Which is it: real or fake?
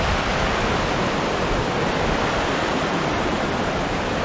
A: fake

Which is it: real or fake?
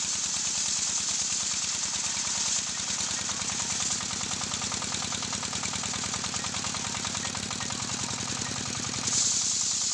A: real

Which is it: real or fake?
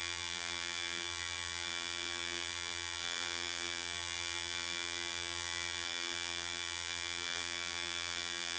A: fake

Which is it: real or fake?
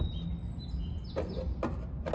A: real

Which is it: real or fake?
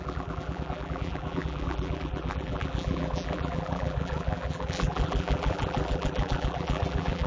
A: fake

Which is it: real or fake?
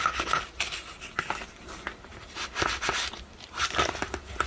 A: fake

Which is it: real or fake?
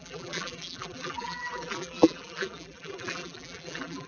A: fake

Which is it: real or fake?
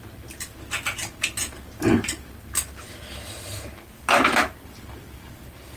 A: real